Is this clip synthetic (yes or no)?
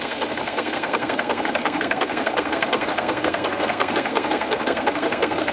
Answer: yes